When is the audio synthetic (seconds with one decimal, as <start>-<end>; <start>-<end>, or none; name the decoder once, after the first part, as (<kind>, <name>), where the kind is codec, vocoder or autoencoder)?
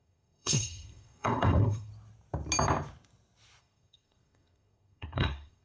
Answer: 0.0-1.9 (codec, SNAC); 3.6-5.6